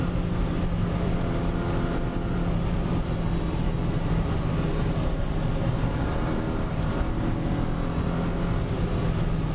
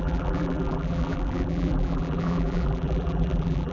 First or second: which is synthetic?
second